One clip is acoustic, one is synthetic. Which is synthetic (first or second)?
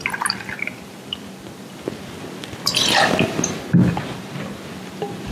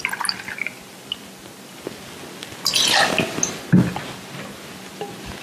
first